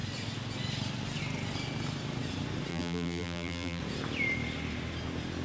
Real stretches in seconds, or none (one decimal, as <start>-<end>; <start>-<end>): 0.0-2.7; 3.8-5.4